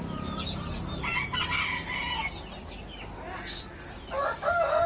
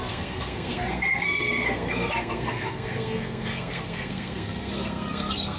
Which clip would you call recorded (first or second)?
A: first